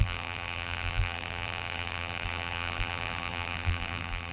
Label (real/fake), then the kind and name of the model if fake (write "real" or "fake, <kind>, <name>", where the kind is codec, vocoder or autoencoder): fake, vocoder, BigVGAN v2